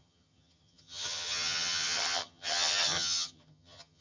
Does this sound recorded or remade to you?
remade